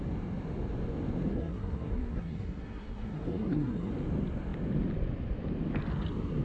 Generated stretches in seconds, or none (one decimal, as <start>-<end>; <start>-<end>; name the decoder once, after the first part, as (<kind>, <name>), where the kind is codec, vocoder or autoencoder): 1.3-3.9 (codec, SNAC)